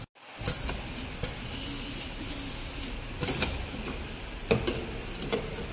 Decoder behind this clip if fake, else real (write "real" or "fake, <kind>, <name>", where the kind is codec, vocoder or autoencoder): real